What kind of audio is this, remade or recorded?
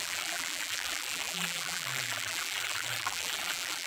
remade